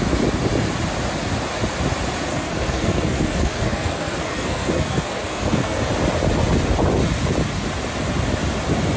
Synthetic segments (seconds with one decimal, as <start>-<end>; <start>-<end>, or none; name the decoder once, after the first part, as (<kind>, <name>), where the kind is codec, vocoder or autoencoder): 2.3-5.8 (codec, SNAC)